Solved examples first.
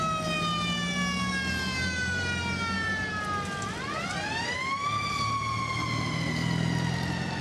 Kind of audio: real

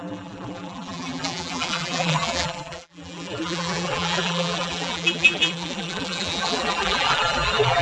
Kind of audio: fake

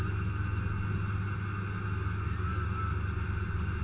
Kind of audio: real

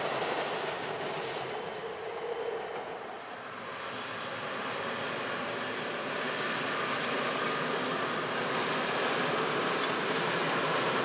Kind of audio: real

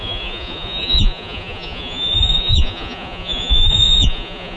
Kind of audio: fake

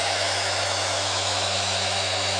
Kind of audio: fake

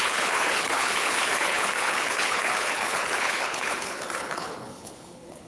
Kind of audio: fake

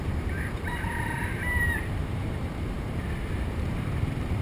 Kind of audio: fake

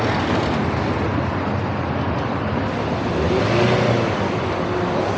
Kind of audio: real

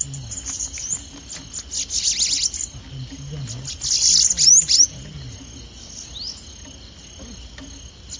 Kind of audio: real